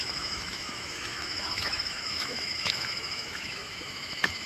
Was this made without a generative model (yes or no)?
no